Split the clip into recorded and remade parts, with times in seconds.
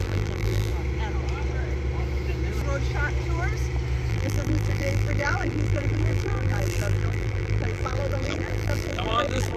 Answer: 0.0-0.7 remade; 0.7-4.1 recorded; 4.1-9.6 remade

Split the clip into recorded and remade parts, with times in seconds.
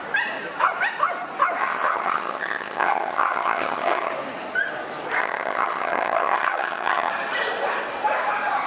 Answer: 0.0-1.6 recorded; 1.6-4.1 remade; 4.1-5.2 recorded; 5.2-7.1 remade; 7.1-8.7 recorded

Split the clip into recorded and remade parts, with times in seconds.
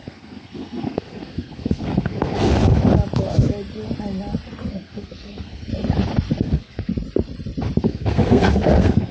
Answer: 0.0-2.5 remade; 2.5-4.7 recorded; 4.7-5.7 remade; 5.7-6.4 recorded; 6.4-6.9 remade; 6.9-7.8 recorded; 7.8-9.1 remade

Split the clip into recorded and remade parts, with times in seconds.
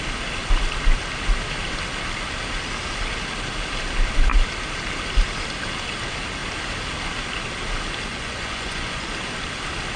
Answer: 0.0-8.1 recorded; 8.1-9.1 remade; 9.1-10.0 recorded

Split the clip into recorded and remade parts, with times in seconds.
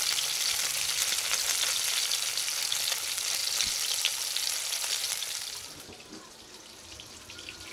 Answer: 0.0-7.7 recorded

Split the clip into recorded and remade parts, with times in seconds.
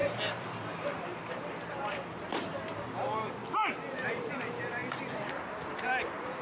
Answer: 0.0-3.4 remade; 3.4-4.0 recorded; 4.0-4.8 remade; 4.8-5.8 recorded; 5.8-6.4 remade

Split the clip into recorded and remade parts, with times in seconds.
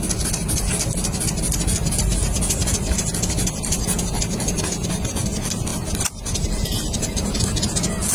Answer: 0.0-8.1 remade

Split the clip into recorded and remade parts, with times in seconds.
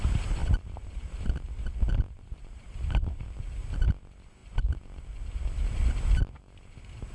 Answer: 0.0-0.4 recorded; 0.4-3.1 remade; 3.1-7.1 recorded